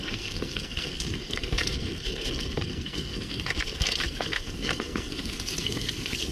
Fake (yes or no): yes